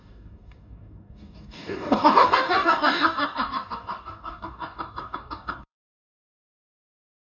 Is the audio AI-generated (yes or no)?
yes